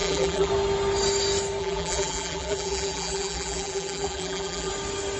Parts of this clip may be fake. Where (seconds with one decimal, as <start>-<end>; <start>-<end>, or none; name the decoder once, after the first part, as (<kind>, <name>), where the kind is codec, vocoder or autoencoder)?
0.0-0.5 (vocoder, BigVGAN v2); 1.6-4.7